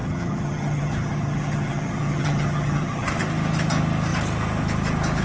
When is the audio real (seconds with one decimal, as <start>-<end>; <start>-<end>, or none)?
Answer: 3.1-5.2